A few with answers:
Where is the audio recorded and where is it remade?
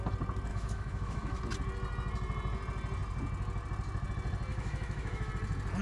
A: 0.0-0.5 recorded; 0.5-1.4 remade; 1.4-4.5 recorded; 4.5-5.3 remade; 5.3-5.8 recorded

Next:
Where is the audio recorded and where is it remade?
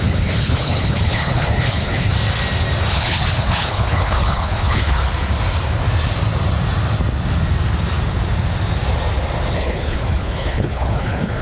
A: 0.0-2.1 remade; 2.1-2.9 recorded; 2.9-5.0 remade; 5.0-9.5 recorded; 9.5-11.4 remade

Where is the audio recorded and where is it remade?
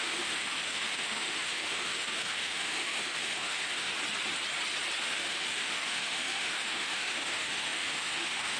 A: 0.0-3.9 remade; 3.9-5.0 recorded; 5.0-8.6 remade